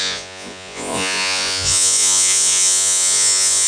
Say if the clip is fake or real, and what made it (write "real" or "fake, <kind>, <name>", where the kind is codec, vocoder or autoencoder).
fake, vocoder, Vocos